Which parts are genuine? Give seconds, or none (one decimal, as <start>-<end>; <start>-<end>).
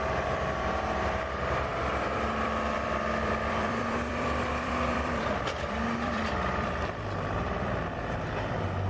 none